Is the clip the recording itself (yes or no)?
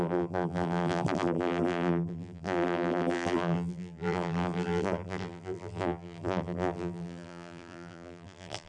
no